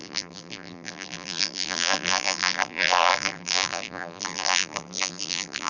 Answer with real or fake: fake